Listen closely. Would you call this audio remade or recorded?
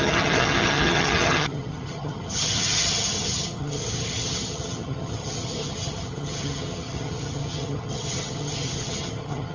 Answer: remade